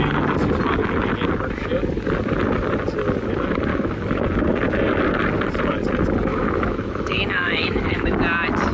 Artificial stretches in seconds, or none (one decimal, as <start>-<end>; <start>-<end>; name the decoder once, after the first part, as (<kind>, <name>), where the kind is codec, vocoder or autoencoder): 3.7-4.2 (autoencoder, DAC-VAE); 6.3-8.2